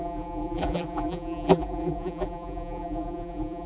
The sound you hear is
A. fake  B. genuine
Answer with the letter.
A